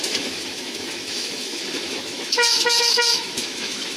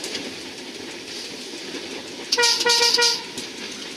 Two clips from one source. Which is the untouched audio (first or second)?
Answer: second